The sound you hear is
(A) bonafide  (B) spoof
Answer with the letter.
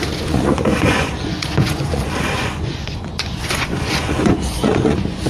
B